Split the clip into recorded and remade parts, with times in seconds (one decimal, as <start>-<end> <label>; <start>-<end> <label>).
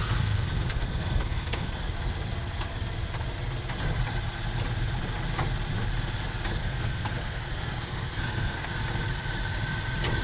0.0-1.8 remade; 1.8-6.6 recorded; 6.6-8.7 remade; 8.7-10.2 recorded